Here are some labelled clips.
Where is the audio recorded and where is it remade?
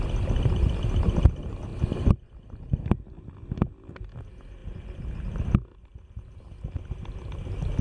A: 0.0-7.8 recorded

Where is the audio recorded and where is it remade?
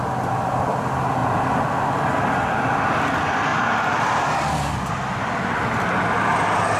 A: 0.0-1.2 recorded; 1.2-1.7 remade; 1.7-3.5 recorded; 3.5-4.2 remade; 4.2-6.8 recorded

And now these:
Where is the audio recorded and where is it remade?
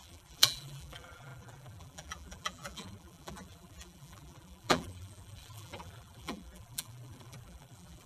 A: 0.0-8.1 remade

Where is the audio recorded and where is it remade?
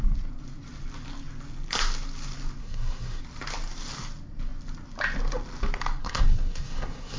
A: 0.0-2.6 recorded; 2.6-3.2 remade; 3.2-6.0 recorded; 6.0-7.2 remade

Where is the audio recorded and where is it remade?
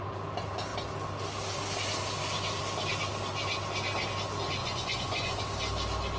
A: 0.0-4.6 recorded; 4.6-5.4 remade; 5.4-6.2 recorded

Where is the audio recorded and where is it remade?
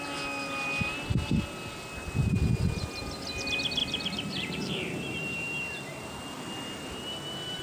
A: 0.0-3.8 recorded; 3.8-6.1 remade; 6.1-7.6 recorded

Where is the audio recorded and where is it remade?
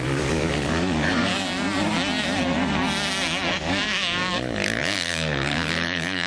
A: 0.0-1.3 remade; 1.3-3.5 recorded; 3.5-6.3 remade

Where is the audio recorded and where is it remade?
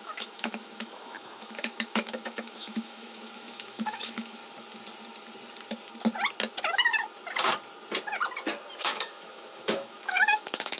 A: 0.0-4.4 remade; 4.4-8.8 recorded; 8.8-10.8 remade